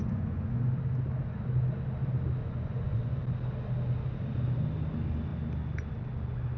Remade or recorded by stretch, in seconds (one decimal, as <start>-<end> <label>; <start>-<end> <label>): 0.0-0.7 remade; 0.7-2.4 recorded; 2.4-3.2 remade; 3.2-6.6 recorded